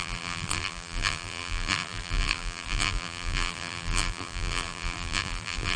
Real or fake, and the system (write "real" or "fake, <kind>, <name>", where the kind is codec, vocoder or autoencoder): fake, vocoder, BigVGAN v2